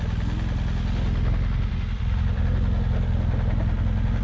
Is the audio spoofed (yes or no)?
no